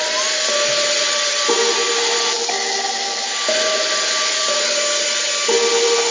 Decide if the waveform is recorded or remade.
recorded